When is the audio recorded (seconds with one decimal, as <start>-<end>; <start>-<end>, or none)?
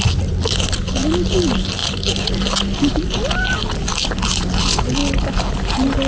0.0-6.1